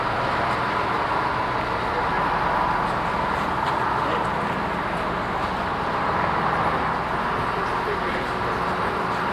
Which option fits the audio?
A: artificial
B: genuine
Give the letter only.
B